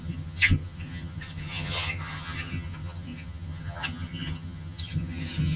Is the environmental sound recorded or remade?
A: remade